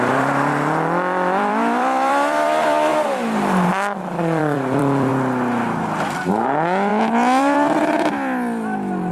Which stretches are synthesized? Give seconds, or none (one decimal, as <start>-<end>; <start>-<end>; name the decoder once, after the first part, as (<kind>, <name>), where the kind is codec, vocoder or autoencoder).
0.0-5.1 (vocoder, BigVGAN v2); 6.3-6.9; 7.4-9.1